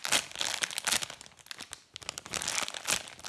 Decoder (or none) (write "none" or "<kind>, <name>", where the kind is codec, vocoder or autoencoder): none